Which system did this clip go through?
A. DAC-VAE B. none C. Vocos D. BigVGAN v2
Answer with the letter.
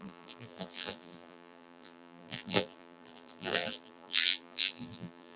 D